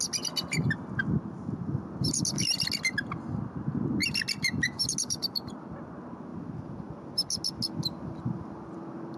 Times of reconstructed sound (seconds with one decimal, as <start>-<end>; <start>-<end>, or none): none